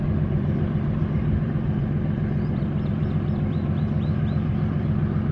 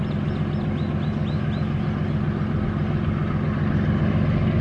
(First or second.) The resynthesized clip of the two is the first